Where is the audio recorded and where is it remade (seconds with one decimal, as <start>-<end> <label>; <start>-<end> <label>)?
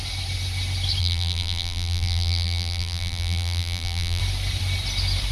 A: 0.0-1.0 recorded; 1.0-4.2 remade; 4.2-5.3 recorded